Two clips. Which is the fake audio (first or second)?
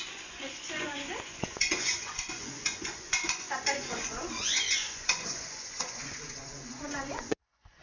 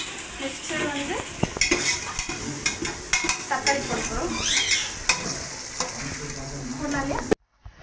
first